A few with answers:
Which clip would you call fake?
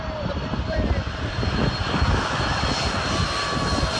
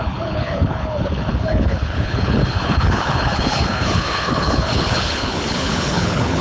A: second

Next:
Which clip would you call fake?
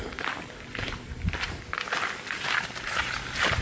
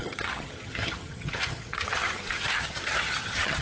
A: second